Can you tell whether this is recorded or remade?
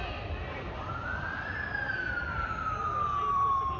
remade